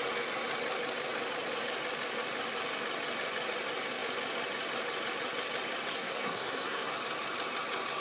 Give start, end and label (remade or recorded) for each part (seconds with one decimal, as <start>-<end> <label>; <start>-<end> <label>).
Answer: 0.0-5.9 recorded; 5.9-6.9 remade; 6.9-8.0 recorded

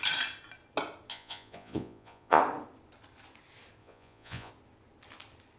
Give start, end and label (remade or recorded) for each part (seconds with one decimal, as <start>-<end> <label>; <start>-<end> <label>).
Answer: 0.0-1.1 recorded; 1.1-2.4 remade; 2.4-3.8 recorded; 3.8-4.5 remade; 4.5-5.6 recorded